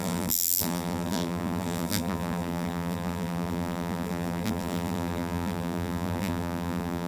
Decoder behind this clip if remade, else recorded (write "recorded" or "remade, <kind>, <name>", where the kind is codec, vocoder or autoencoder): remade, vocoder, BigVGAN v2